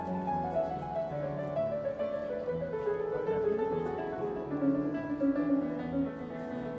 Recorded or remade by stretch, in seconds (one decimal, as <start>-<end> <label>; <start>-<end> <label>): 0.0-2.2 recorded; 2.2-4.2 remade; 4.2-4.9 recorded; 4.9-5.5 remade; 5.5-6.8 recorded